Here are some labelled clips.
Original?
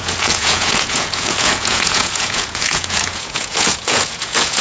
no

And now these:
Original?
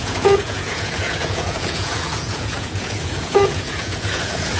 no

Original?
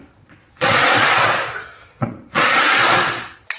no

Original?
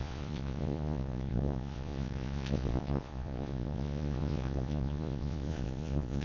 no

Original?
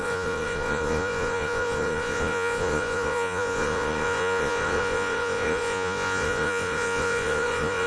no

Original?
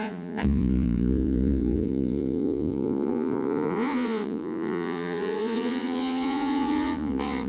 no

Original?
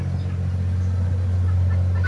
yes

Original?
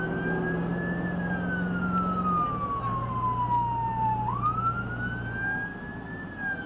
yes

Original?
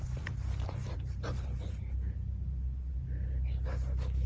yes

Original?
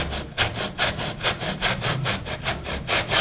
yes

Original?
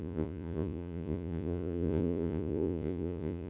no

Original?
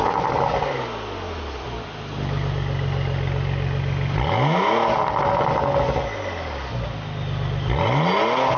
yes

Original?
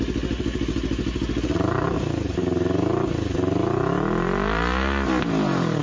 yes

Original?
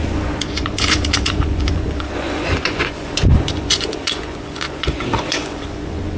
no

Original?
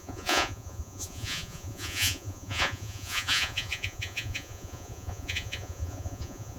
no